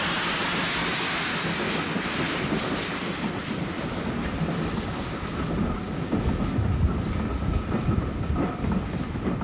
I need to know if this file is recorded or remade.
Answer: recorded